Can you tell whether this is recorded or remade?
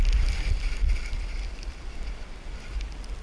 remade